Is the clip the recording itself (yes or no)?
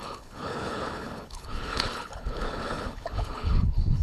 no